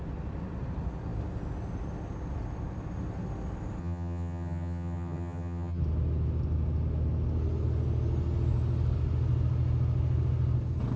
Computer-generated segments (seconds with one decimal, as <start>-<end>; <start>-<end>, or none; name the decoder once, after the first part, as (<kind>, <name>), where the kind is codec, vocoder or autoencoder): 3.8-5.8 (vocoder, HiFi-GAN)